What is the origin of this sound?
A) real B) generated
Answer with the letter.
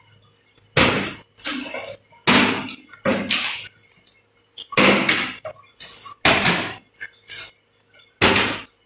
A